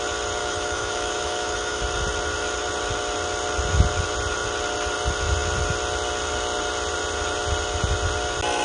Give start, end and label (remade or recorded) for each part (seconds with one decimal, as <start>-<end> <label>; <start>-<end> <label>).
0.0-0.4 recorded; 0.4-1.8 remade; 1.8-8.6 recorded